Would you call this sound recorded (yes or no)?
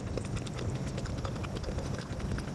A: yes